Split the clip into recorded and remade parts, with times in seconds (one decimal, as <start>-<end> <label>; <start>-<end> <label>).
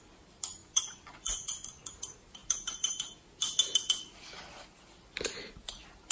0.0-0.6 recorded; 0.6-1.9 remade; 1.9-6.1 recorded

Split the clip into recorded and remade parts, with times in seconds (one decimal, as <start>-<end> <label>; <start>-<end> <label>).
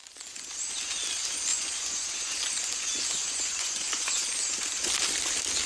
0.0-0.5 remade; 0.5-1.5 recorded; 1.5-4.9 remade; 4.9-5.7 recorded